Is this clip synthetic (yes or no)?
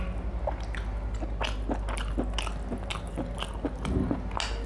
no